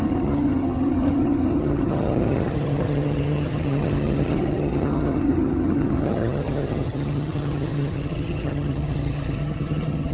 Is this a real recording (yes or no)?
no